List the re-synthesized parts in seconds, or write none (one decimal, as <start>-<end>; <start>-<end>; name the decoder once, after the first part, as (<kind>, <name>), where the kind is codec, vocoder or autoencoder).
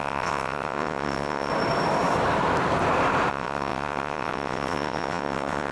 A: 0.0-1.5 (vocoder, WaveNeXt); 3.3-5.7